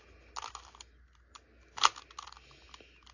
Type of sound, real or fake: real